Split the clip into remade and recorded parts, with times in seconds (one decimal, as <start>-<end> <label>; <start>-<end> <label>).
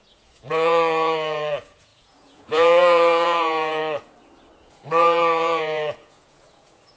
0.0-3.8 remade; 3.8-4.6 recorded; 4.6-7.0 remade